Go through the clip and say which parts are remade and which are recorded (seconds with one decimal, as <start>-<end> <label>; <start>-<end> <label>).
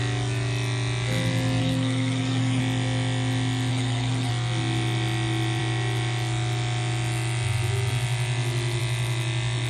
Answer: 0.0-1.6 recorded; 1.6-2.6 remade; 2.6-3.7 recorded; 3.7-4.3 remade; 4.3-9.7 recorded